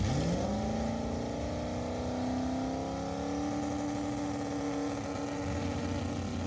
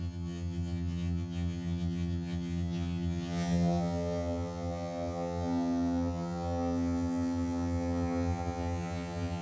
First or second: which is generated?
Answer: second